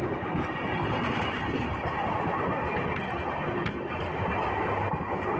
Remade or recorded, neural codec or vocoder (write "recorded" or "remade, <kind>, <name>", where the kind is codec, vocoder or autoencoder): recorded